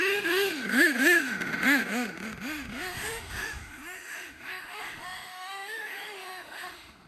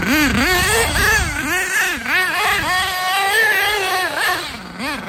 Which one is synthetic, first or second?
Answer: first